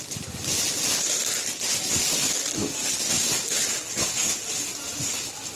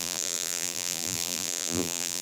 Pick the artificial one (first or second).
second